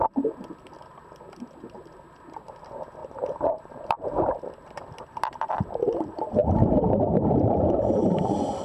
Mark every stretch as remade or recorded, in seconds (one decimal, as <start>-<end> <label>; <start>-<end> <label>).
0.0-3.0 recorded; 3.0-4.9 remade; 4.9-6.4 recorded; 6.4-7.8 remade; 7.8-8.6 recorded